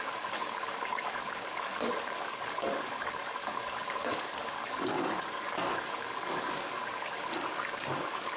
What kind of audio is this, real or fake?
fake